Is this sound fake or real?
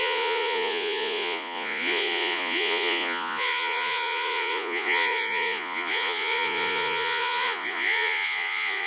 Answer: fake